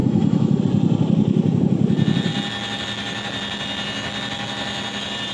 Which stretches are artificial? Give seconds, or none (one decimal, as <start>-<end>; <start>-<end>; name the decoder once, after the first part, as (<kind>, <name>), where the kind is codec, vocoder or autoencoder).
0.0-0.6 (autoencoder, DAC-VAE)